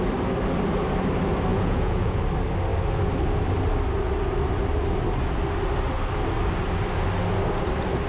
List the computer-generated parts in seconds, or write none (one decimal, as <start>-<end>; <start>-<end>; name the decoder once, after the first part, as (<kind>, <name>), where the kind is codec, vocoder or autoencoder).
1.5-2.2 (vocoder, Vocos)